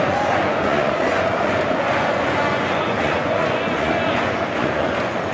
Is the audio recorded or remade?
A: remade